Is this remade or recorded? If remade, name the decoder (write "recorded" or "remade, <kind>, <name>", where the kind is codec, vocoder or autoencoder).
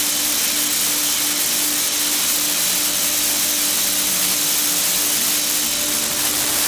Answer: recorded